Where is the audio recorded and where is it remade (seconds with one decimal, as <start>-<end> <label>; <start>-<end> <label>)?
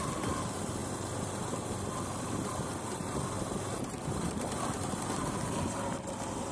0.0-6.5 recorded